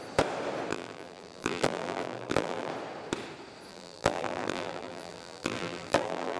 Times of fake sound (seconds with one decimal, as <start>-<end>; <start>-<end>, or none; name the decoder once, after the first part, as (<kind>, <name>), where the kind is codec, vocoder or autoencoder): 0.7-2.7 (vocoder, BigVGAN v2); 3.7-6.4